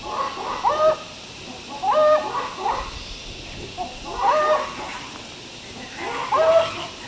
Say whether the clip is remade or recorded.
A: recorded